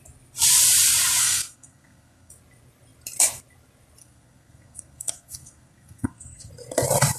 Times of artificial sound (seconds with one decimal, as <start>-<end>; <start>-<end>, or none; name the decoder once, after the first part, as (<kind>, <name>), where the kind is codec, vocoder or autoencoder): 1.2-2.3 (codec, SNAC); 4.0-6.5